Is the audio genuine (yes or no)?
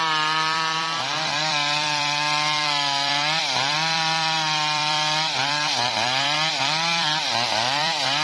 no